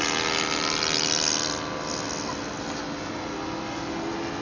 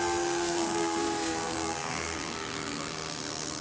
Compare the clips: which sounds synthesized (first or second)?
second